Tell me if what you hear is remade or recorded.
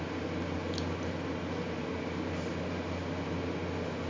recorded